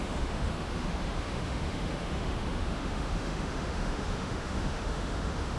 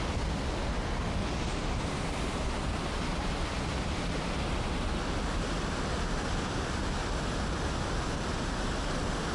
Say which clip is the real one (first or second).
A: second